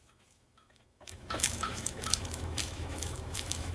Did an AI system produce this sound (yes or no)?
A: yes